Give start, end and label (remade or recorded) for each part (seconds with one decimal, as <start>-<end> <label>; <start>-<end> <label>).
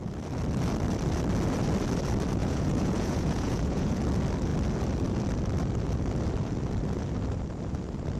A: 0.0-2.4 recorded; 2.4-4.0 remade; 4.0-8.2 recorded